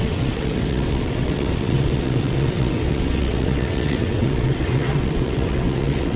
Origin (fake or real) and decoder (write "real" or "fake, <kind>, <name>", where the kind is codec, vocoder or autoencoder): fake, vocoder, WaveNeXt